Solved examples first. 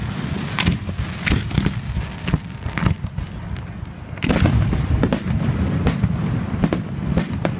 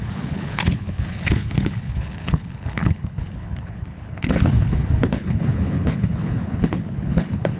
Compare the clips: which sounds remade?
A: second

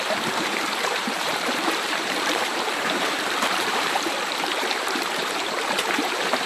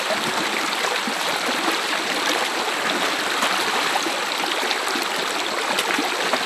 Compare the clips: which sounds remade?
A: first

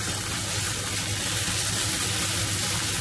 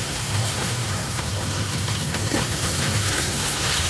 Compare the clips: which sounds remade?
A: second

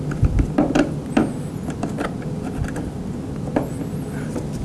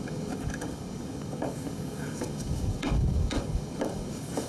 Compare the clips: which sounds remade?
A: second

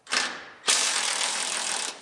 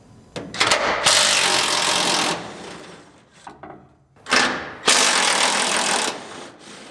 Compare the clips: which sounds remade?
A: first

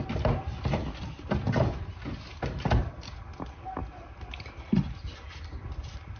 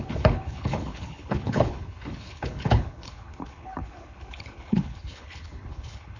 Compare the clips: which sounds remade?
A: second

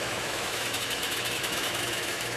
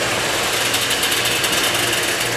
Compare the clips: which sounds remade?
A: first